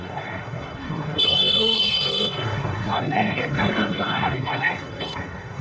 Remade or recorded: remade